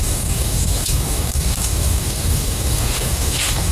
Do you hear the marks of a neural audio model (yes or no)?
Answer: yes